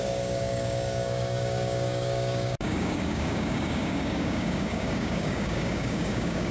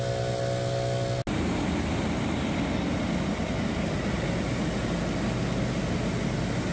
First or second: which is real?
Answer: second